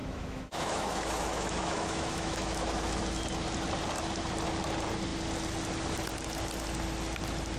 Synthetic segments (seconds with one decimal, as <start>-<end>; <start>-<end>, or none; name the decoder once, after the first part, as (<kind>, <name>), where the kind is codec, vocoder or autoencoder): 0.0-3.0 (autoencoder, DAC-VAE)